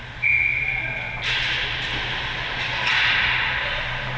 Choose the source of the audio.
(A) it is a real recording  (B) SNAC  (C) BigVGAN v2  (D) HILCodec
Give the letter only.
A